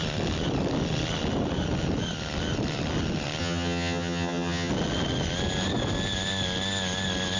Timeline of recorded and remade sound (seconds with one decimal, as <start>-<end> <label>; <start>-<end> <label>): 0.0-3.4 recorded; 3.4-4.7 remade; 4.7-7.4 recorded